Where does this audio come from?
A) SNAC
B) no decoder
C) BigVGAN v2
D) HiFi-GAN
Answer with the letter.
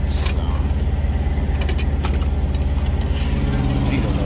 B